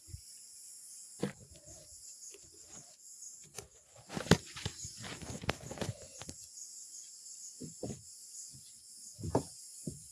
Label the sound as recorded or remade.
recorded